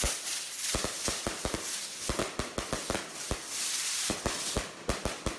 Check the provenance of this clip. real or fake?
real